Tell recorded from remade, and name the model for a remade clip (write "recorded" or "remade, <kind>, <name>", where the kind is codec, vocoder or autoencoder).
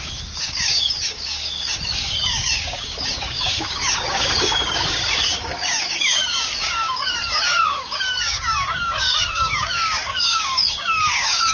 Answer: remade, codec, DAC